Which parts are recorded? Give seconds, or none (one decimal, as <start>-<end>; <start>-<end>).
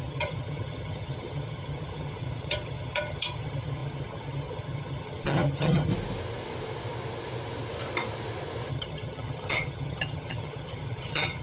5.9-8.7